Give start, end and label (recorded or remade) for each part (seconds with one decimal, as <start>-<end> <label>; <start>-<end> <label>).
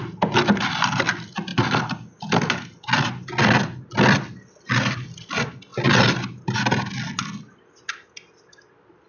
0.0-9.1 recorded